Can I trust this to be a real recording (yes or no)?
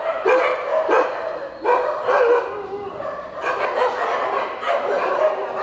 yes